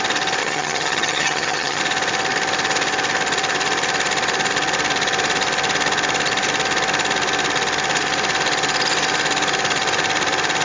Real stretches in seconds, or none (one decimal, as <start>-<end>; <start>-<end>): 0.0-0.4; 1.8-10.6